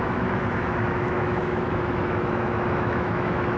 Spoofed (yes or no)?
yes